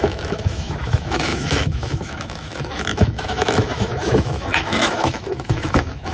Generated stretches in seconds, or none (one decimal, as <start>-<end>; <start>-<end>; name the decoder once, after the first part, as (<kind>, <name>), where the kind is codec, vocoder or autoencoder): 0.0-6.1 (autoencoder, DAC-VAE)